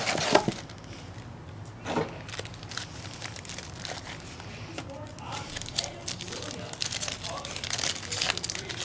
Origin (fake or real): real